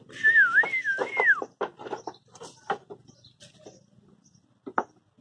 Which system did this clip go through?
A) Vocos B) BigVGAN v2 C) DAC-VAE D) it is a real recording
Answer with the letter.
D